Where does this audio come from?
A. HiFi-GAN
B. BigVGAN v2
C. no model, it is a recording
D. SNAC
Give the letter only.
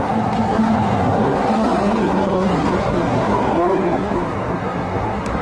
D